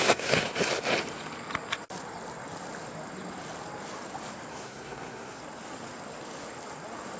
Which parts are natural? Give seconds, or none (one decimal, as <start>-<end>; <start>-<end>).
0.5-4.5; 5.4-7.2